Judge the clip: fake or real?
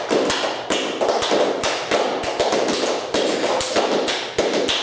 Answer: real